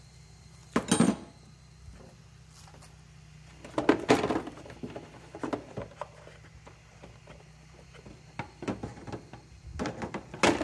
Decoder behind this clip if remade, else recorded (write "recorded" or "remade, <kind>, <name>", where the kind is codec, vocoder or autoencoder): recorded